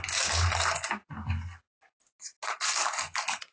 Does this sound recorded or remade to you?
recorded